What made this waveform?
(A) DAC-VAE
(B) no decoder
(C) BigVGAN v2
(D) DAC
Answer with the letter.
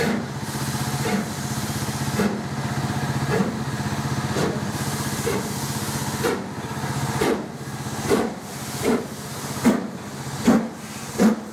B